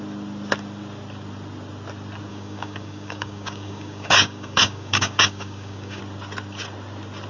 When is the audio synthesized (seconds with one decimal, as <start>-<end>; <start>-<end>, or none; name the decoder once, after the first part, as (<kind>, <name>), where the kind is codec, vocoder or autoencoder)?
2.3-6.0 (codec, DAC)